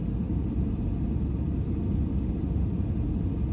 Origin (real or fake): real